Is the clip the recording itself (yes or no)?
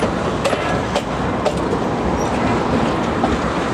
yes